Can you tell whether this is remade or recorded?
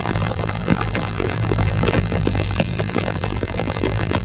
remade